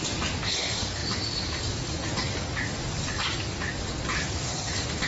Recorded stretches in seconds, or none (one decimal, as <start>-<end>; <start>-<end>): 0.0-5.1